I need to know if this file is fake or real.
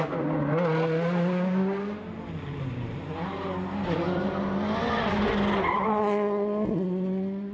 real